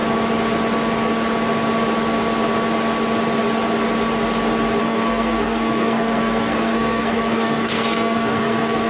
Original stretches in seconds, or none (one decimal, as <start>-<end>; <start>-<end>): 0.0-4.8